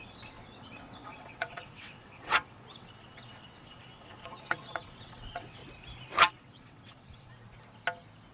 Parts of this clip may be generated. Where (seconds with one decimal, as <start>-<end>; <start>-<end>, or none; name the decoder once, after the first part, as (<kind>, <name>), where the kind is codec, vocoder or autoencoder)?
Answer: 0.0-5.6 (vocoder, WaveNeXt); 6.3-7.3